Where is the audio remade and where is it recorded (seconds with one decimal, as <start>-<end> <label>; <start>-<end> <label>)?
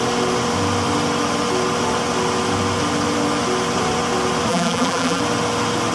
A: 0.0-4.5 recorded; 4.5-5.2 remade; 5.2-5.9 recorded